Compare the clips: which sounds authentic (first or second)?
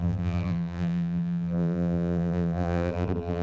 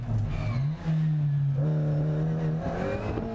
second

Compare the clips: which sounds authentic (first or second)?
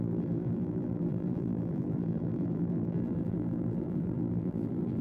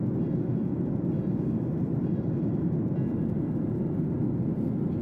second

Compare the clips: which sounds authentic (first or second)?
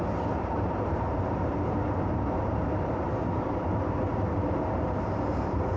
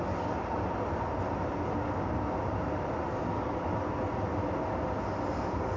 second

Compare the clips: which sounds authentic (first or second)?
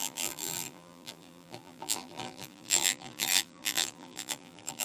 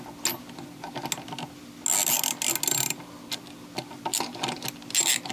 second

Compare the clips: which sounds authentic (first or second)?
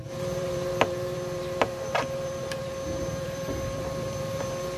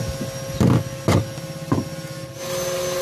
second